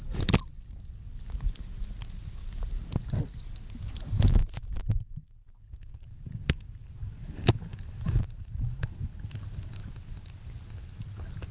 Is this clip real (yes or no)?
yes